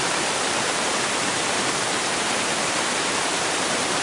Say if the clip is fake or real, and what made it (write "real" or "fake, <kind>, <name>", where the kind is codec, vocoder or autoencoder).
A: fake, vocoder, BigVGAN v2